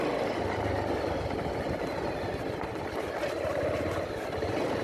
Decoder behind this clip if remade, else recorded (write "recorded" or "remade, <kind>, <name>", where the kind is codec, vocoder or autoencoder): recorded